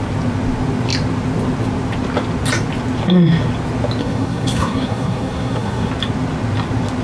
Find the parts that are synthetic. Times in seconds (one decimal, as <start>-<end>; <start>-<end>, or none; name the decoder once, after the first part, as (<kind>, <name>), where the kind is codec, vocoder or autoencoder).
4.0-5.9 (codec, SNAC)